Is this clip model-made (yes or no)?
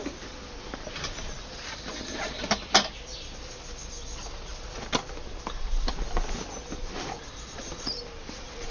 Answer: no